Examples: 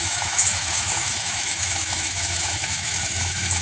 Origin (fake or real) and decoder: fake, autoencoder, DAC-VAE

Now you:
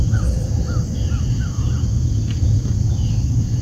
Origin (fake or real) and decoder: real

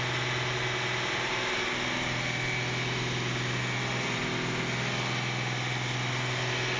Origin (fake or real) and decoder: real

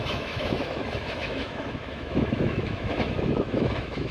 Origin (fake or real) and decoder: fake, autoencoder, DAC-VAE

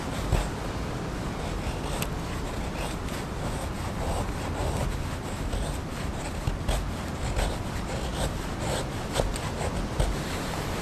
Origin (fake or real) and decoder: real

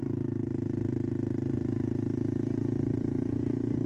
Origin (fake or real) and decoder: real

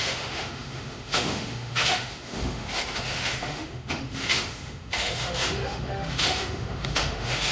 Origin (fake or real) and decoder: fake, autoencoder, DAC-VAE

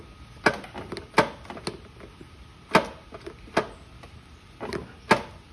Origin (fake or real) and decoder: real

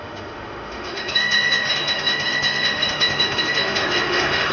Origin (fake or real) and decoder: fake, autoencoder, DAC-VAE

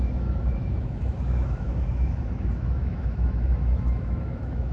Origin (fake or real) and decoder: fake, autoencoder, DAC-VAE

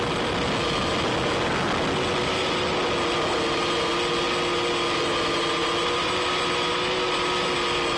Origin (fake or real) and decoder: real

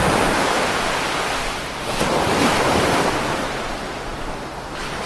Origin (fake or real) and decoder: real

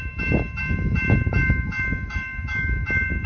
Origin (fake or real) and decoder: fake, autoencoder, DAC-VAE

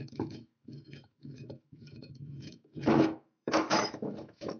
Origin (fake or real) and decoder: fake, autoencoder, DAC-VAE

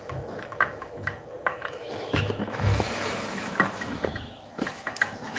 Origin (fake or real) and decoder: fake, autoencoder, DAC-VAE